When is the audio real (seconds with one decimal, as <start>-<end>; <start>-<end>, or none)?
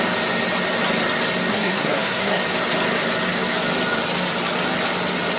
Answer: 0.0-1.5; 2.4-5.4